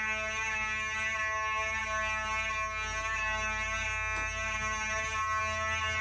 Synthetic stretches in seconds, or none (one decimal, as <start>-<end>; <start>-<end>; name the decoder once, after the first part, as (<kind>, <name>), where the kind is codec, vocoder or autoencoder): none